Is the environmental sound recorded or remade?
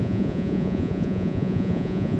remade